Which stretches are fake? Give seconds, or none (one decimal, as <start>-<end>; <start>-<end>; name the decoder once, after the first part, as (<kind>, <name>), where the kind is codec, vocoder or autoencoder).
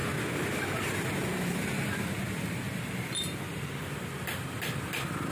none